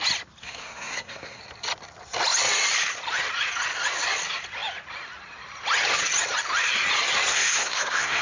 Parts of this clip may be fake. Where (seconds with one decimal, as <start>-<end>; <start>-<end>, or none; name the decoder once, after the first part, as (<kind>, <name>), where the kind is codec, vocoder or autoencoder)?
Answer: 0.4-1.4 (codec, SNAC); 7.3-8.2

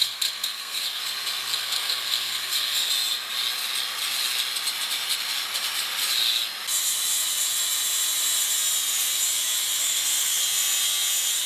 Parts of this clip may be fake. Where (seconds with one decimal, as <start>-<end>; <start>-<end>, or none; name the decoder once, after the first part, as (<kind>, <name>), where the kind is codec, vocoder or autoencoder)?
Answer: 0.0-1.0 (codec, SNAC); 1.5-2.9; 9.8-10.4

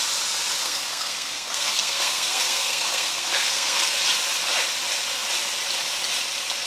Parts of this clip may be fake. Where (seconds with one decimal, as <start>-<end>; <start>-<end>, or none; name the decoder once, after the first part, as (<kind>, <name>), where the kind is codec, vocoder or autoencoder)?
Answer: 0.6-4.0 (codec, SNAC)

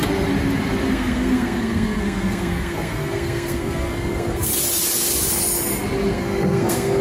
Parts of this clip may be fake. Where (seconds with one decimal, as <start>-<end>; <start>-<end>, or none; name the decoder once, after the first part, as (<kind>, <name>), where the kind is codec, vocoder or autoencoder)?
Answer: 0.9-4.5 (codec, SNAC); 6.1-7.0

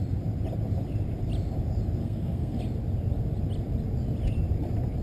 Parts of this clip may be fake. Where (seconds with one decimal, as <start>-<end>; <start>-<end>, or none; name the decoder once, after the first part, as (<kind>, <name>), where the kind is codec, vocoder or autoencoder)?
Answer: 2.0-2.6 (codec, SNAC)

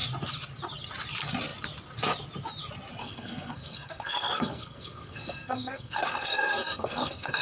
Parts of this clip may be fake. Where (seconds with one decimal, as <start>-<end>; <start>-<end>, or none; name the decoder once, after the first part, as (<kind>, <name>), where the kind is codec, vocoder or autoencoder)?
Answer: 3.0-7.4 (codec, SNAC)